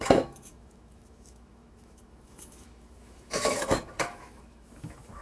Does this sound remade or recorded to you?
remade